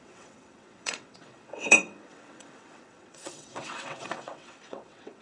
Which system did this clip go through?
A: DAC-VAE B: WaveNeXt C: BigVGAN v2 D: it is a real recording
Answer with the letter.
B